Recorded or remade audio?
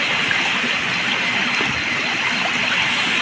recorded